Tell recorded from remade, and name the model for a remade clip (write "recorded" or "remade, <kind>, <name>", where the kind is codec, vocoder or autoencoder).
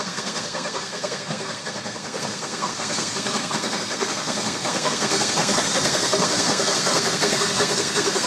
remade, codec, SNAC